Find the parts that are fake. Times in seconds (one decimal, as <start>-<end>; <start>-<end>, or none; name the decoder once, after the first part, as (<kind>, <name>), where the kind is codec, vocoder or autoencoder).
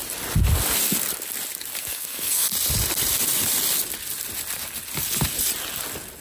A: 1.8-2.5 (codec, SNAC)